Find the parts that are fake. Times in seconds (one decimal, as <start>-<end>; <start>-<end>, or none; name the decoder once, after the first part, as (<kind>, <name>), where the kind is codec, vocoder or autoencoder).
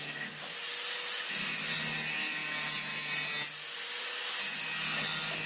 none